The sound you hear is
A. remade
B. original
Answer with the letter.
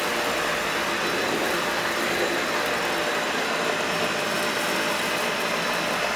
B